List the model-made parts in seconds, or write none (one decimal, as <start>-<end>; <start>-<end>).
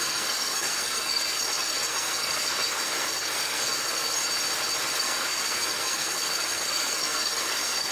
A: 0.0-4.2; 5.0-7.9